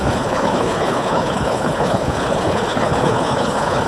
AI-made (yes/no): yes